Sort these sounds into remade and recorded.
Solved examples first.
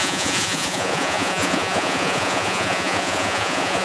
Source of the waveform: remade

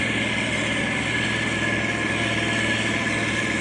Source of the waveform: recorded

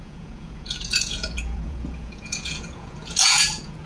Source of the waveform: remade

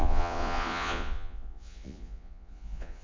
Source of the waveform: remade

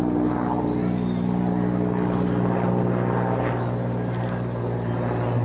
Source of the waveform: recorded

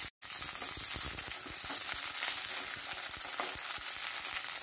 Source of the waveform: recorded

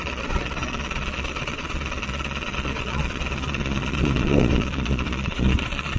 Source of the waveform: remade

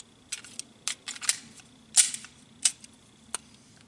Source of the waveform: recorded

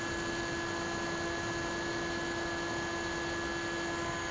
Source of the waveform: recorded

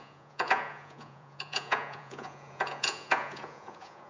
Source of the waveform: remade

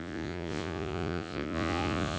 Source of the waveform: remade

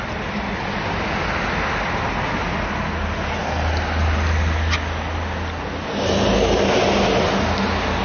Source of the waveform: recorded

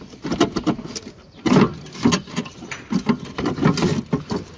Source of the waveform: recorded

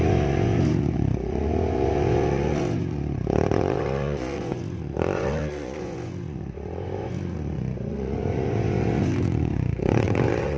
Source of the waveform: remade